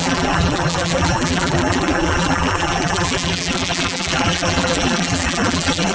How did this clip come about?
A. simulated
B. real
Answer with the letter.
A